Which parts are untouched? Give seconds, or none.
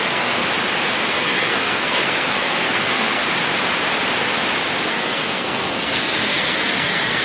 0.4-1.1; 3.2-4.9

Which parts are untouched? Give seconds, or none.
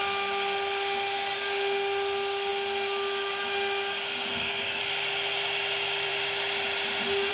0.0-4.3; 4.8-7.3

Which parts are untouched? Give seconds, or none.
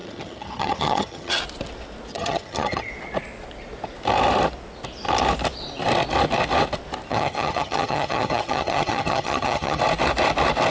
1.4-2.1; 2.9-7.1; 9.8-10.7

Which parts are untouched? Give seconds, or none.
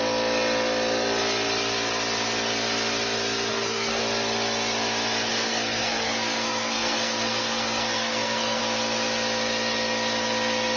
0.0-3.5; 4.0-5.3; 8.6-10.8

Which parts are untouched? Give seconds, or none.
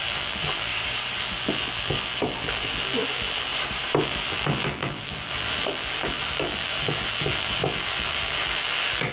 0.7-1.2; 3.5-4.0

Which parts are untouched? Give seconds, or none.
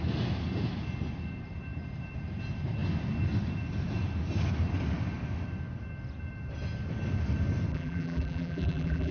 0.0-7.7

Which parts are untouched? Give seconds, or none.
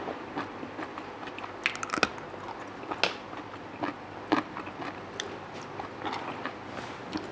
0.0-7.3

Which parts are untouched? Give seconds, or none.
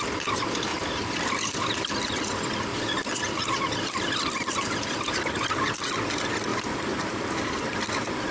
0.0-0.7; 1.3-2.7; 6.0-6.5